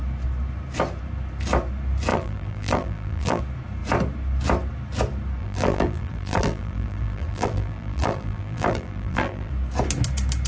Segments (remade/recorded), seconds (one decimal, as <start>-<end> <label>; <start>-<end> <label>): 0.0-2.1 recorded; 2.1-3.4 remade; 3.4-5.4 recorded; 5.4-9.5 remade; 9.5-10.5 recorded